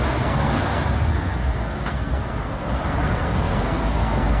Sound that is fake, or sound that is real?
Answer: fake